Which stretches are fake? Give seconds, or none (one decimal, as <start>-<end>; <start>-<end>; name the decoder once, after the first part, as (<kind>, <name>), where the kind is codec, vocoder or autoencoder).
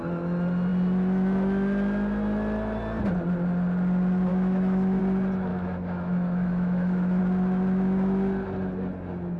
4.3-5.0 (autoencoder, DAC-VAE); 5.5-7.2